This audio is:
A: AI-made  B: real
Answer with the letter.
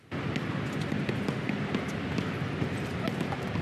B